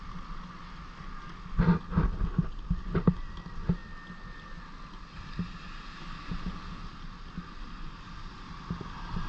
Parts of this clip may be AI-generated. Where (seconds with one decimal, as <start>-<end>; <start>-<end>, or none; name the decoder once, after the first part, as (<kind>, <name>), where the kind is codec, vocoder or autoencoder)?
none